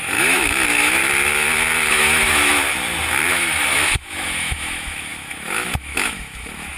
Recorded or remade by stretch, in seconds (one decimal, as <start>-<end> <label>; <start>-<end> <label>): 0.0-1.0 remade; 1.0-1.9 recorded; 1.9-2.6 remade; 2.6-3.3 recorded; 3.3-6.8 remade